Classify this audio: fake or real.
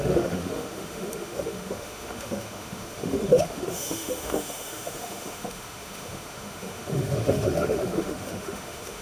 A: fake